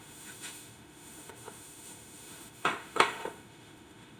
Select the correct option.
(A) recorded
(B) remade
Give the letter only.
B